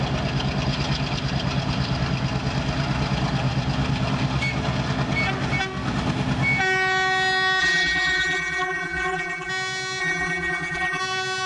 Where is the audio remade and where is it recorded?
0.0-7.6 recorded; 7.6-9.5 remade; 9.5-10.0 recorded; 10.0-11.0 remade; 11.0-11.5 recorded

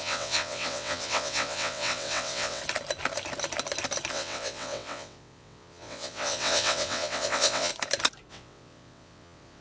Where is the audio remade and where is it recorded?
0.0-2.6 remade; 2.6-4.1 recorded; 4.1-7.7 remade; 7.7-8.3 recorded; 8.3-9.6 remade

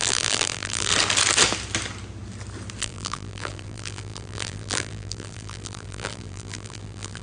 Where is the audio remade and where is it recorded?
0.0-0.9 remade; 0.9-2.8 recorded; 2.8-7.2 remade

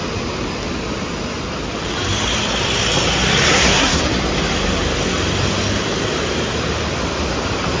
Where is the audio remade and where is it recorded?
0.0-3.5 recorded; 3.5-4.0 remade; 4.0-7.8 recorded

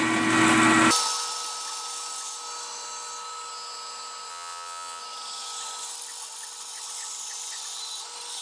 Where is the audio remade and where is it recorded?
0.0-4.3 recorded; 4.3-5.0 remade; 5.0-8.4 recorded

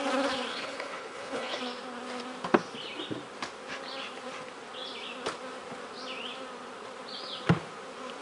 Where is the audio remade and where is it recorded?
0.0-0.5 recorded; 0.5-1.6 remade; 1.6-8.2 recorded

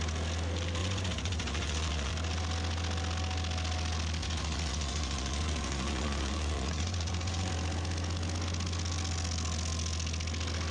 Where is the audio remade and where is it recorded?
0.0-0.8 recorded; 0.8-2.1 remade; 2.1-4.2 recorded; 4.2-7.5 remade; 7.5-10.7 recorded